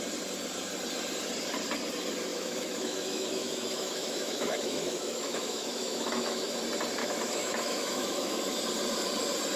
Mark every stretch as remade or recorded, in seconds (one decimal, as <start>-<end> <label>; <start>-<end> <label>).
0.0-2.3 recorded; 2.3-6.6 remade; 6.6-7.0 recorded; 7.0-8.6 remade; 8.6-9.6 recorded